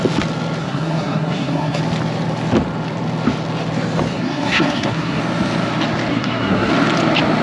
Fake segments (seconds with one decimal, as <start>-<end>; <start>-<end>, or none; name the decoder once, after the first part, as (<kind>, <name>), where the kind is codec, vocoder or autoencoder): 0.6-1.8 (codec, SNAC); 4.1-5.2; 6.1-6.7